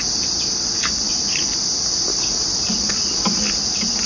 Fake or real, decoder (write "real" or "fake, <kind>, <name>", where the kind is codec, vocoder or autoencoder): real